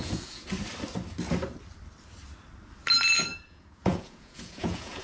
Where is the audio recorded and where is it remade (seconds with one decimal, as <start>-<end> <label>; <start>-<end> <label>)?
0.0-0.5 remade; 0.5-3.5 recorded; 3.5-5.0 remade